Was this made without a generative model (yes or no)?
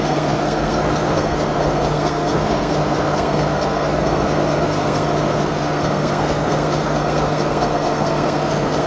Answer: no